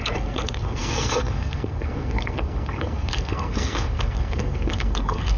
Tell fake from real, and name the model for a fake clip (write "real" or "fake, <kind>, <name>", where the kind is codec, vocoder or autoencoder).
fake, codec, SNAC